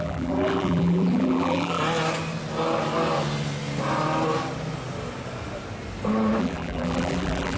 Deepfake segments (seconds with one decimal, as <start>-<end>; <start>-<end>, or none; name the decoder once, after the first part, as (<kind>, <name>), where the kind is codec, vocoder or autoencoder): 0.0-1.8 (vocoder, BigVGAN v2); 6.4-7.6

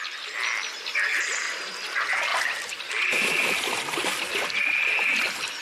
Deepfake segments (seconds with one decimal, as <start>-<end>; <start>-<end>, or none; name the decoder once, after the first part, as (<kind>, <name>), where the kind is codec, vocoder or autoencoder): 1.1-1.7 (vocoder, BigVGAN v2); 2.3-2.9

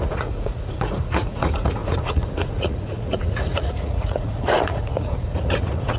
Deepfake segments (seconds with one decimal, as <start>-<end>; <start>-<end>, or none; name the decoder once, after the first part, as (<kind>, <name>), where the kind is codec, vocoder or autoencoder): 0.0-6.0 (vocoder, Vocos)

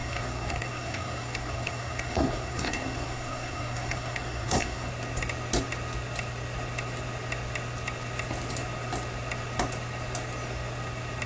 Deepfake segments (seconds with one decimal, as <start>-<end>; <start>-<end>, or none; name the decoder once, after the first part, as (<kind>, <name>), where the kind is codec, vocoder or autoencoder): 0.0-4.9 (codec, SNAC)

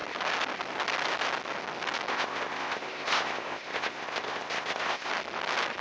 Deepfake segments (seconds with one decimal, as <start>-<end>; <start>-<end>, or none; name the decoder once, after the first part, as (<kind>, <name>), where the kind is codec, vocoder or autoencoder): 2.1-5.1 (codec, ZipCodec)

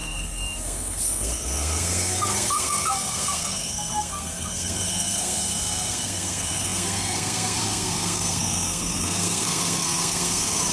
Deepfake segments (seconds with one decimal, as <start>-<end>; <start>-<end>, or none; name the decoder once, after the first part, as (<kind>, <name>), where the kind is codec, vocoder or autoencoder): 0.0-10.7 (codec, SNAC)